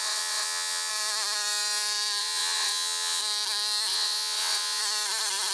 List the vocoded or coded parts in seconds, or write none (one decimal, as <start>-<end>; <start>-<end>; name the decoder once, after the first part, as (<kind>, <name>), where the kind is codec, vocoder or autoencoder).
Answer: 0.0-0.9 (vocoder, WaveNeXt); 2.2-3.2; 3.9-4.8